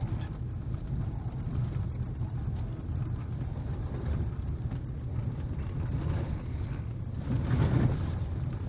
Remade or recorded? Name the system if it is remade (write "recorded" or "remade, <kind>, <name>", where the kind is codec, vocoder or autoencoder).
recorded